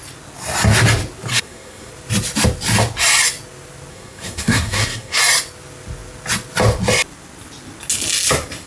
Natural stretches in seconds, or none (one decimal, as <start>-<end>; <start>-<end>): 0.0-1.3; 1.9-3.9; 5.2-8.7